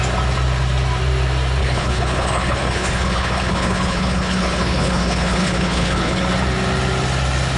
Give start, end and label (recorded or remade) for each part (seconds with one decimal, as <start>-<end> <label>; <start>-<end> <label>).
0.0-1.6 recorded; 1.6-6.2 remade; 6.2-7.6 recorded